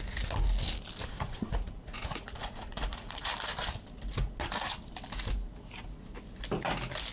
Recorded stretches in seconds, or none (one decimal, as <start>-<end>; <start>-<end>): 0.0-1.0; 3.3-7.1